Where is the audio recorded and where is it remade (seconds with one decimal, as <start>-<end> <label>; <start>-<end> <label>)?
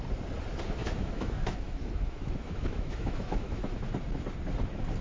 0.0-0.8 recorded; 0.8-3.8 remade; 3.8-5.0 recorded